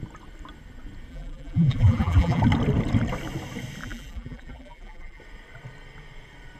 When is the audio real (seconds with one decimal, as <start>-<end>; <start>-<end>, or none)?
0.0-1.1; 2.4-3.8; 5.2-6.6